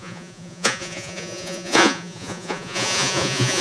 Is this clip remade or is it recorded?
remade